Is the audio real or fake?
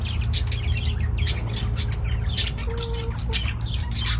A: real